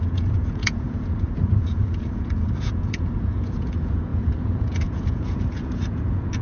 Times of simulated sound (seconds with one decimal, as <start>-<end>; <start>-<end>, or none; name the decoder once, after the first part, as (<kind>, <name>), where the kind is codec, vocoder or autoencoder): 0.0-6.4 (vocoder, Vocos)